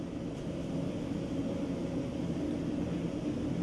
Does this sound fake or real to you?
real